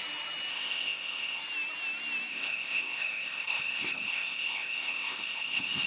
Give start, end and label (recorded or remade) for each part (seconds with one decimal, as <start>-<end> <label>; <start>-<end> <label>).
0.0-0.5 recorded; 0.5-1.4 remade; 1.4-2.3 recorded; 2.3-5.9 remade